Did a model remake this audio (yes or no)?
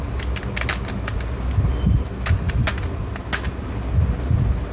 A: no